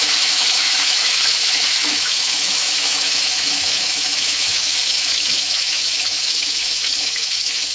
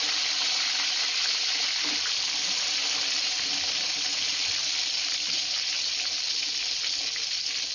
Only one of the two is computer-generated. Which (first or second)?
first